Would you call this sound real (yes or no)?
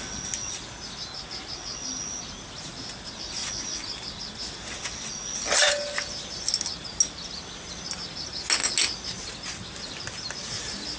yes